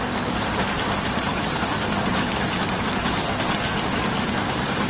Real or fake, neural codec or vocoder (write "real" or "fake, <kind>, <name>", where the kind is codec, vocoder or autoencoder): real